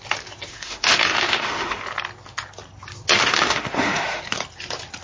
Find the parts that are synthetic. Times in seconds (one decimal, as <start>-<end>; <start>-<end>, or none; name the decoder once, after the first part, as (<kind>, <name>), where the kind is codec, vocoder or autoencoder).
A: 0.5-1.8 (autoencoder, DAC-VAE); 3.3-4.2